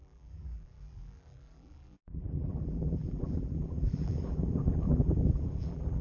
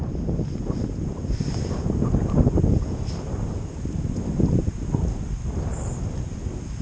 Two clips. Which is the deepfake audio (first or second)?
first